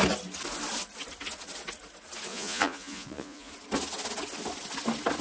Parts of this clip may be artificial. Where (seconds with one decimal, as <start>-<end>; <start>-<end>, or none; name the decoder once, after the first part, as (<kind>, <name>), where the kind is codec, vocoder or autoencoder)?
2.3-3.5 (vocoder, Vocos)